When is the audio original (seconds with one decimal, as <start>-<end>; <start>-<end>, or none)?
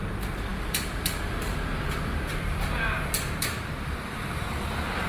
none